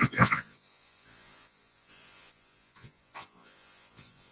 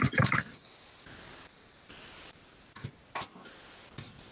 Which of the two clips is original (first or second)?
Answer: second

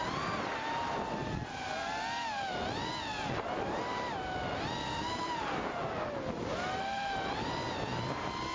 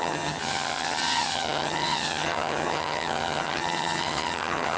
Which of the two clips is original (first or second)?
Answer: first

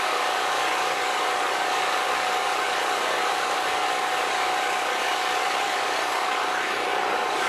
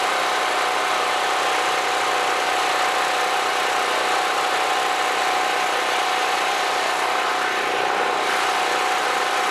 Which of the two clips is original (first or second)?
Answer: second